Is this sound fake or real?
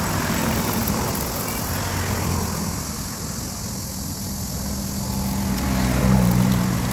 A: real